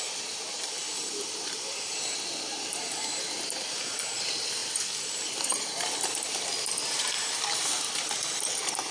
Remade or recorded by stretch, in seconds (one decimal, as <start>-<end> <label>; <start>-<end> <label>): 0.0-8.9 recorded